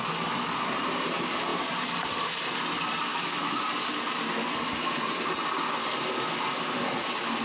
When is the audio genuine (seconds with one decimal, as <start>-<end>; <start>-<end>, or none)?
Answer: 0.0-3.1; 3.6-7.4